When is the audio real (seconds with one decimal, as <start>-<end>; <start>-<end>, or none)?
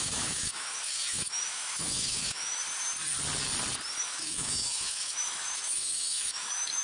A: 2.6-4.0